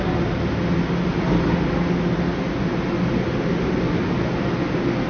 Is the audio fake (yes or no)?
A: no